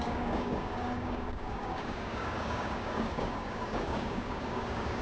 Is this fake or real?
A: fake